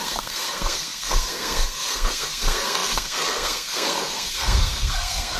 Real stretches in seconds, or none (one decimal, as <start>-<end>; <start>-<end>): none